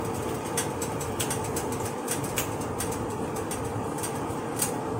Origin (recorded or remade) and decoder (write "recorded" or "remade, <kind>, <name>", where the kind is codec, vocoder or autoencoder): recorded